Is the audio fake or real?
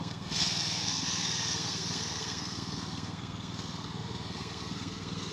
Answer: fake